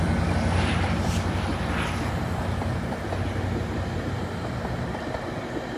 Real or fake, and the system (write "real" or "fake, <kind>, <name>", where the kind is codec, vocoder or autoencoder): real